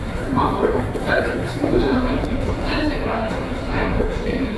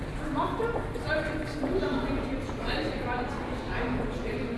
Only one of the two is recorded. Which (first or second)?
second